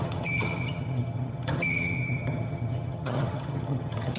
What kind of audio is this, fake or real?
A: fake